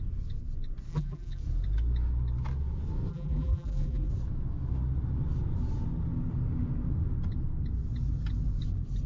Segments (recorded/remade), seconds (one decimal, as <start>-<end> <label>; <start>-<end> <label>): 0.0-0.9 recorded; 0.9-1.4 remade; 1.4-3.1 recorded; 3.1-4.1 remade; 4.1-9.1 recorded